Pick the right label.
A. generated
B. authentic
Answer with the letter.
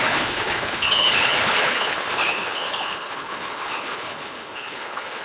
A